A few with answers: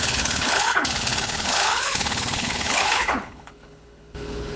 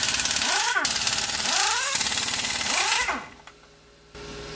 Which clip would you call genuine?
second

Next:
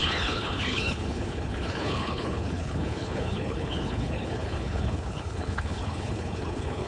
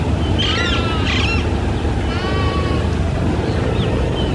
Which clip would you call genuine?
second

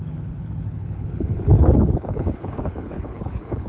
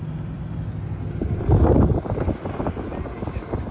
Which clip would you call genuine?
second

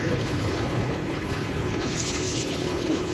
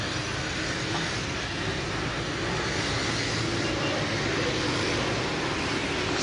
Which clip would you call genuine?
second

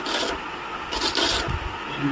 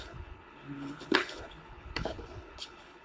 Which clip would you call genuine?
first